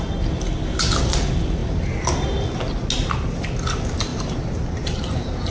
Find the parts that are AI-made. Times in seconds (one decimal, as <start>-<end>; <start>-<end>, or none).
4.1-5.5